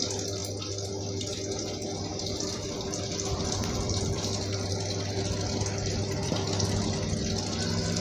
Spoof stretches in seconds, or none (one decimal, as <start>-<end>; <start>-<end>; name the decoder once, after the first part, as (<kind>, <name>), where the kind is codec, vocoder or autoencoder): 0.4-1.3 (vocoder, BigVGAN v2); 2.1-4.7; 6.2-6.9